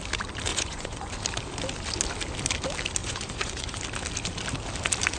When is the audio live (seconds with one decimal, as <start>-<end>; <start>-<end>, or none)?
0.0-0.5; 1.1-3.0; 3.8-5.2